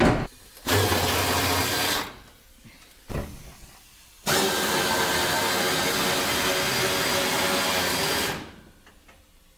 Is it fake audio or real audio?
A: real